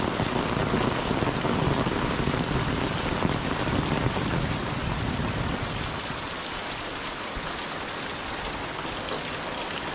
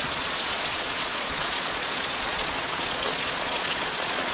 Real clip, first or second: first